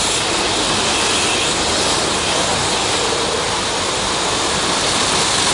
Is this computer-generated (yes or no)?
no